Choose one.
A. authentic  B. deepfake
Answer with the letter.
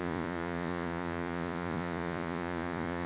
B